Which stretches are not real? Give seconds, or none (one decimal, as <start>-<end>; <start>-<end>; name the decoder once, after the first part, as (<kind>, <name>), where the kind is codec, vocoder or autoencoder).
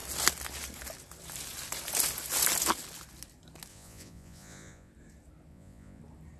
3.7-4.9 (vocoder, Vocos); 5.5-6.0